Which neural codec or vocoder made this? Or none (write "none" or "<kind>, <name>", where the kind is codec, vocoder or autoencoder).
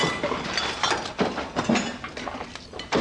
none